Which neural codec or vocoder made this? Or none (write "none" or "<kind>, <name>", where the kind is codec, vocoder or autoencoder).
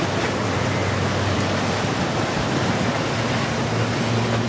none